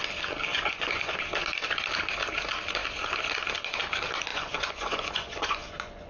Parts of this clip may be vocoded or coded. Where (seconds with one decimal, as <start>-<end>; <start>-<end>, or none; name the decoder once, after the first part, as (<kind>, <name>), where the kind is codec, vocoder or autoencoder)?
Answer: 0.5-1.2 (vocoder, Vocos); 4.3-6.1